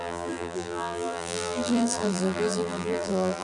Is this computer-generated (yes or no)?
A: yes